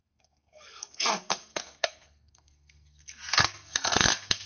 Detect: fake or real fake